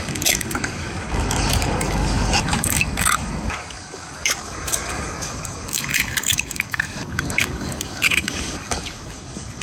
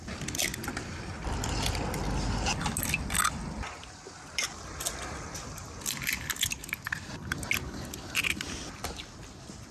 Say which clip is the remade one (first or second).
first